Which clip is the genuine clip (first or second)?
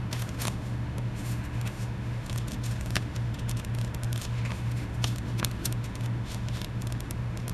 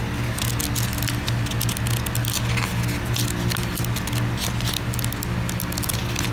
second